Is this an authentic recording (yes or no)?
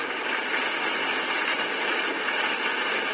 yes